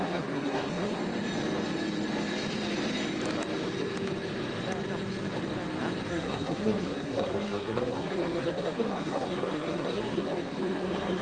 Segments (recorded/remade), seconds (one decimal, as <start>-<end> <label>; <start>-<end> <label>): 0.0-1.0 remade; 1.0-6.1 recorded; 6.1-11.2 remade